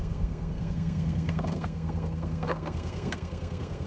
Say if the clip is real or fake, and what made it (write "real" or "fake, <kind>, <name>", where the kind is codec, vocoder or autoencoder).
fake, codec, SNAC